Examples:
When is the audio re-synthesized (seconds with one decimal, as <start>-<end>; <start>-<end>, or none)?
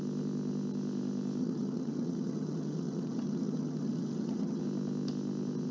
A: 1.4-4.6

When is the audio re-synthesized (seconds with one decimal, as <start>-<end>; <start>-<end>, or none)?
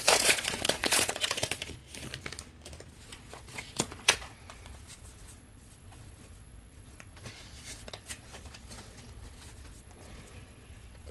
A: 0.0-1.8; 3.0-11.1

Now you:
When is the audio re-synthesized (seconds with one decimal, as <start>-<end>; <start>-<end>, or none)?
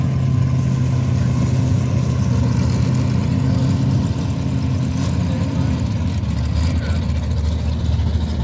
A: none